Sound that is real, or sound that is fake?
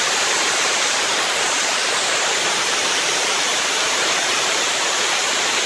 fake